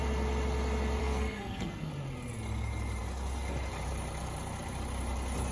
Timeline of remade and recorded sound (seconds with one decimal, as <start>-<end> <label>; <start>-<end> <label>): 0.0-1.0 recorded; 1.0-1.9 remade; 1.9-5.5 recorded